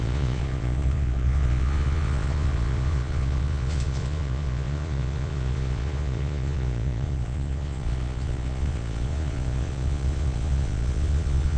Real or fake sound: fake